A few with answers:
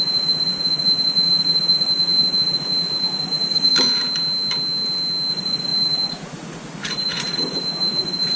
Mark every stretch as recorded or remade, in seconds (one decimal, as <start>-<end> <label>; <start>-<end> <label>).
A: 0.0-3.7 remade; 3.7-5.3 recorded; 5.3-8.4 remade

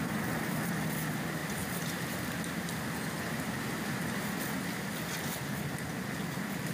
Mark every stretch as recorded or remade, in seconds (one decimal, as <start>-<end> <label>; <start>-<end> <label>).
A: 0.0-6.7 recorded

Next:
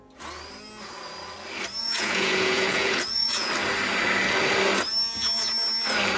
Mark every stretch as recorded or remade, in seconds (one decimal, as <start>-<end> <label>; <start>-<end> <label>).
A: 0.0-1.8 recorded; 1.8-3.5 remade; 3.5-6.2 recorded

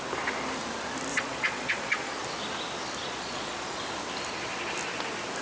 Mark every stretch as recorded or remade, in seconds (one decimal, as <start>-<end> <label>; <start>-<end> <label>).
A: 0.0-1.1 recorded; 1.1-2.1 remade; 2.1-3.0 recorded; 3.0-3.8 remade; 3.8-5.4 recorded

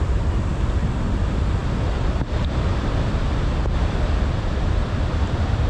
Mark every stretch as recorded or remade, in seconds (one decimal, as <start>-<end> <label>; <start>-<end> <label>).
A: 0.0-5.7 recorded

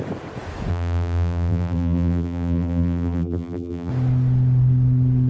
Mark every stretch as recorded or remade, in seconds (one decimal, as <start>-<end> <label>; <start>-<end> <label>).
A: 0.0-0.7 recorded; 0.7-3.9 remade; 3.9-5.3 recorded

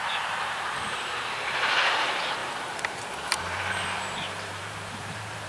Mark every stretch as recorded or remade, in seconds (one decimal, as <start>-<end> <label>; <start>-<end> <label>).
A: 0.0-5.5 remade